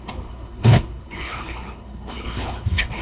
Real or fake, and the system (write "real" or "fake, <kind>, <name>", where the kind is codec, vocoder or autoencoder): fake, codec, HILCodec